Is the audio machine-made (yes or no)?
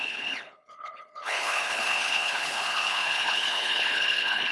yes